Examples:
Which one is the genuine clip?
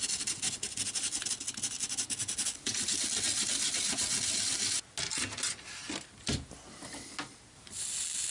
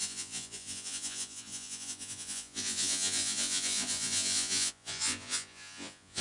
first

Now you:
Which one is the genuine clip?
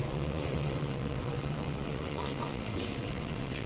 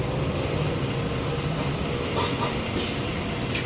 second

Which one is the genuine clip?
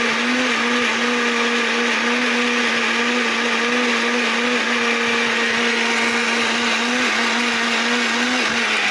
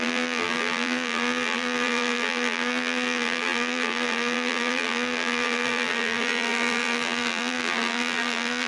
first